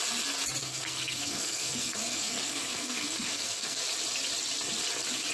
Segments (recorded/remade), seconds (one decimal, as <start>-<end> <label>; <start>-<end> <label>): 0.0-0.6 recorded; 0.6-3.8 remade; 3.8-5.3 recorded